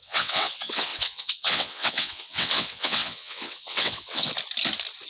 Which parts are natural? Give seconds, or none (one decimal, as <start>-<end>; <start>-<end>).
4.3-5.1